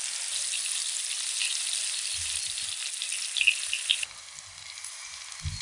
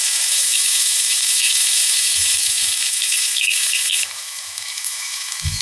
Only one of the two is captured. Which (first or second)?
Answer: first